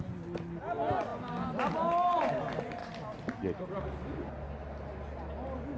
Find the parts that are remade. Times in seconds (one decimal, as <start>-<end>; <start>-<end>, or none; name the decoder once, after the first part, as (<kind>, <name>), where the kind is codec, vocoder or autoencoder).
none